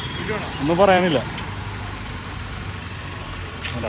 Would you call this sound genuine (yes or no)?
no